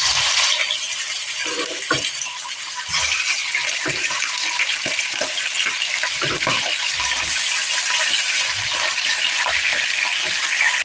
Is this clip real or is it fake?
real